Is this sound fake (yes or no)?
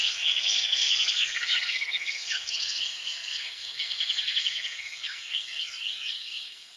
yes